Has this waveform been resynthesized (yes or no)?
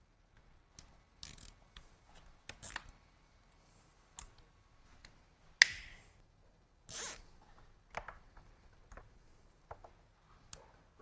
no